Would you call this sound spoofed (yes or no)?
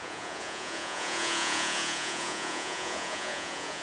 yes